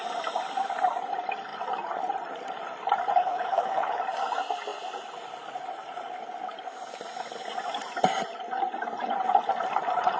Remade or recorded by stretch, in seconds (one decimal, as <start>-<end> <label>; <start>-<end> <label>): 0.0-3.2 recorded; 3.2-4.0 remade; 4.0-10.2 recorded